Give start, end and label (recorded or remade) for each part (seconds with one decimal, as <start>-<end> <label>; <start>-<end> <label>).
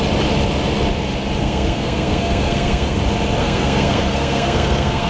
0.0-1.4 recorded; 1.4-3.0 remade; 3.0-3.4 recorded; 3.4-5.1 remade